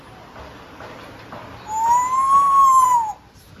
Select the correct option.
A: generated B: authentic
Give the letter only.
B